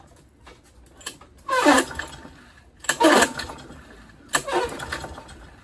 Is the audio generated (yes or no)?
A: no